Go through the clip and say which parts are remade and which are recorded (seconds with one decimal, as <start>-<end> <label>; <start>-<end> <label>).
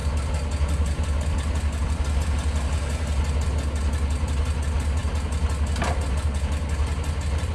0.0-7.5 recorded